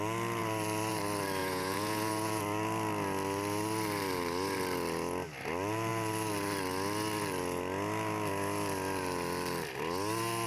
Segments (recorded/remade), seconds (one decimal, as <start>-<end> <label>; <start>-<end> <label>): 0.0-1.4 recorded; 1.4-2.4 remade; 2.4-10.5 recorded